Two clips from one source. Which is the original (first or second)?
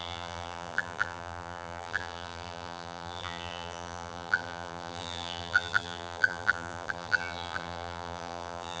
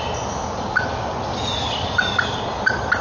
second